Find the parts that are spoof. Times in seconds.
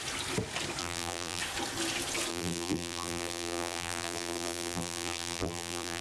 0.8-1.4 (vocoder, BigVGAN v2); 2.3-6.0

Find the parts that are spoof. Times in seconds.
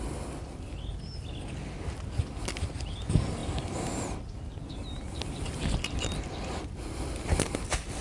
3.4-6.7 (vocoder, BigVGAN v2)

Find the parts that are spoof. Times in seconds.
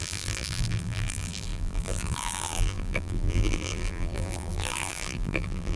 0.0-5.8 (vocoder, BigVGAN v2)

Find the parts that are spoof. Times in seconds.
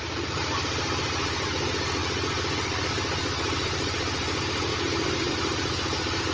0.0-2.0 (vocoder, BigVGAN v2); 2.8-6.3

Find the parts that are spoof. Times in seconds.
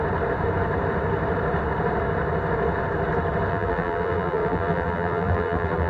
3.5-5.9 (vocoder, BigVGAN v2)